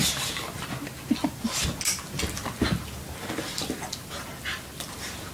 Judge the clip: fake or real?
real